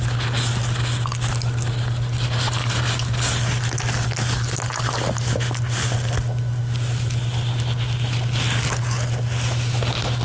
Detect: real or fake real